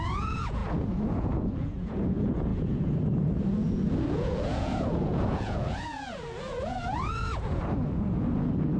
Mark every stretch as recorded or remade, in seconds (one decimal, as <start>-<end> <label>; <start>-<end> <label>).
0.0-8.8 remade